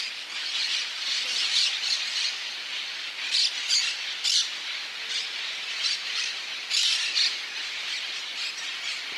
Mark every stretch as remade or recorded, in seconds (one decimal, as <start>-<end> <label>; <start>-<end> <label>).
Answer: 0.0-9.2 recorded